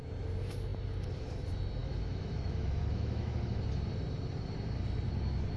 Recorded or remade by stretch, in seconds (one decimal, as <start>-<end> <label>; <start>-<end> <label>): 0.0-1.8 recorded; 1.8-3.6 remade; 3.6-5.6 recorded